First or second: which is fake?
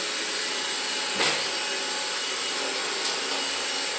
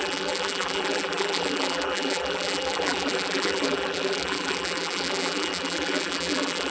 second